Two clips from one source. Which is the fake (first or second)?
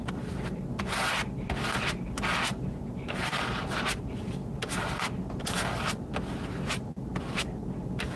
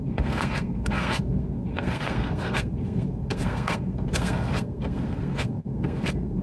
second